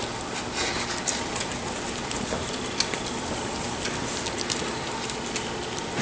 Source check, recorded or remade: recorded